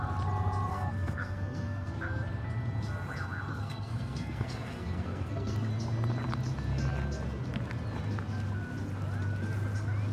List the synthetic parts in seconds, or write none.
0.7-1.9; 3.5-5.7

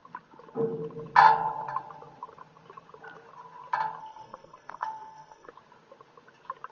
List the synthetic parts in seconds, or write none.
4.0-5.5

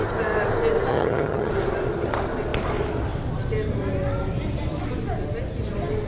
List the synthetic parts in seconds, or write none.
0.9-1.5

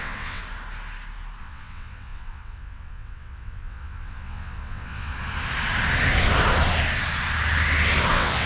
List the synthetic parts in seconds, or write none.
0.0-0.4; 1.4-5.1; 8.1-8.5

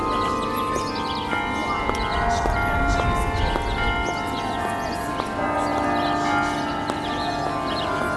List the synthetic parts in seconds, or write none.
none

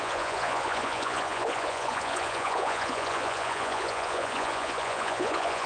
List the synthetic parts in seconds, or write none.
0.0-5.7

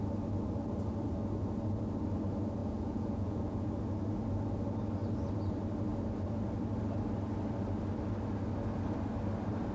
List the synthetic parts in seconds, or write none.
2.6-3.7

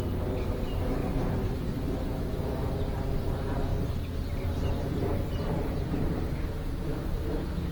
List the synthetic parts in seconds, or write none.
6.9-7.7